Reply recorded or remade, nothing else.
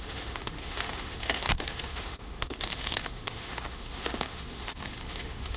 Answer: remade